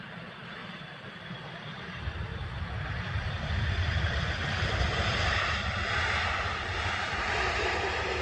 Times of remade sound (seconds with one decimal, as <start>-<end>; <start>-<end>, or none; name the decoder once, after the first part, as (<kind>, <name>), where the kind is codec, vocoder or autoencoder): 0.0-2.3 (vocoder, BigVGAN v2); 2.9-8.2